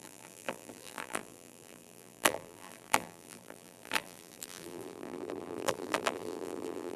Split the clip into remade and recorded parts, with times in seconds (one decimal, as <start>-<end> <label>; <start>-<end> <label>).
0.0-7.0 remade